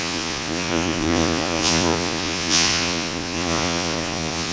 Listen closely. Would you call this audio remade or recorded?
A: remade